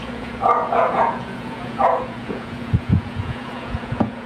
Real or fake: fake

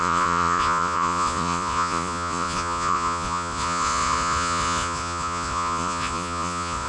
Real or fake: fake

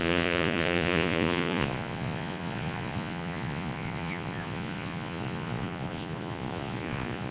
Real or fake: fake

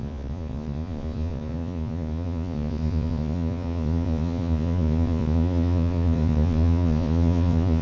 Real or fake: fake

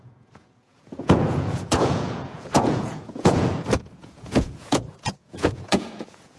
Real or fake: fake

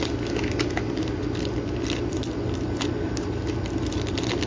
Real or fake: real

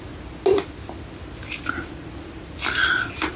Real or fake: real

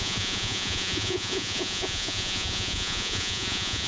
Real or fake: fake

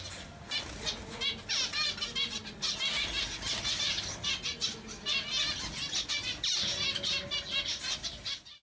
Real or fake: real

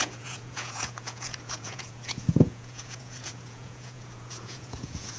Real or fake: fake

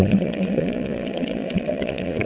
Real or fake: fake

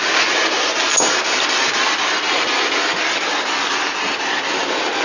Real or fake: real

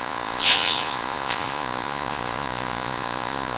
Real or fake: fake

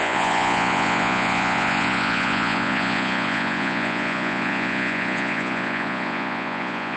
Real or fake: fake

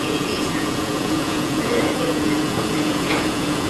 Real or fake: fake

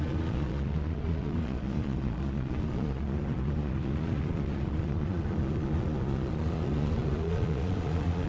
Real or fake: fake